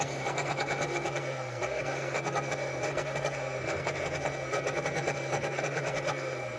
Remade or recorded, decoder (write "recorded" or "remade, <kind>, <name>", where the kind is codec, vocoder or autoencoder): remade, codec, SNAC